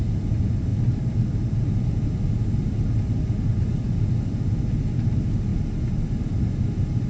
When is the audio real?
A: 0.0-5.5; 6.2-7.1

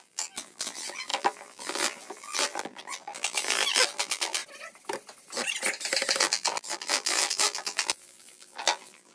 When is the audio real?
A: 4.4-6.2